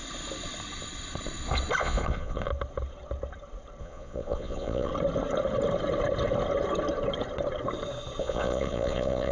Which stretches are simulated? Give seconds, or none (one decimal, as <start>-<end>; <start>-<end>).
1.8-2.5; 3.8-4.9; 8.2-9.3